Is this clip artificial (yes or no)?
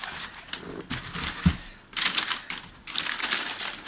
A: no